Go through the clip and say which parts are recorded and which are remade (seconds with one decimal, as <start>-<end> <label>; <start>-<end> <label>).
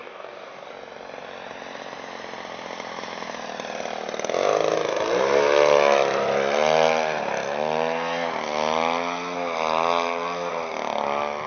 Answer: 0.0-0.7 remade; 0.7-11.5 recorded